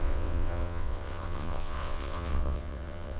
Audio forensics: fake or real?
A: fake